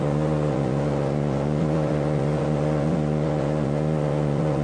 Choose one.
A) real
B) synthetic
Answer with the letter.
B